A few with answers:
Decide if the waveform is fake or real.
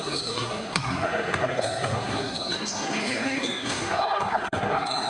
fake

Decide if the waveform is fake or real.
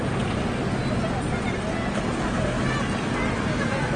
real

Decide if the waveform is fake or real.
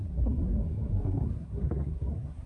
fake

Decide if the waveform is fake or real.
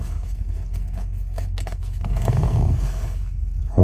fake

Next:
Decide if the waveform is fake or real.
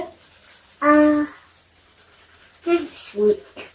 real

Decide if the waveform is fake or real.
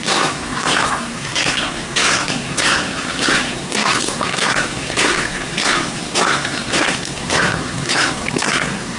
fake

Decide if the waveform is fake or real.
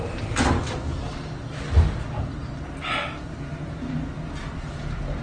real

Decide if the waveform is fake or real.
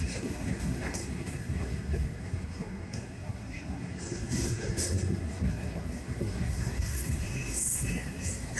fake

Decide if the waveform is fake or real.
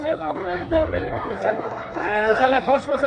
fake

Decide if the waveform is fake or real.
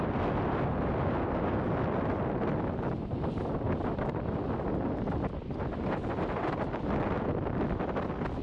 real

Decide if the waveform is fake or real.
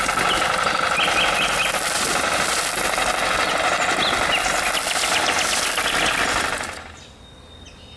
real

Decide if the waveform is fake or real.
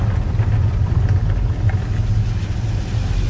real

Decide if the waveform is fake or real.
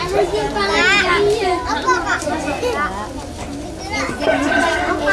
real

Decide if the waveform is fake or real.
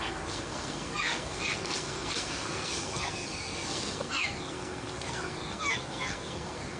fake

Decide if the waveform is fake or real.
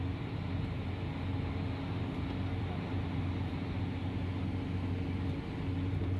real